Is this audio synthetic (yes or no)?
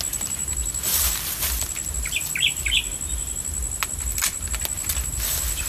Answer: no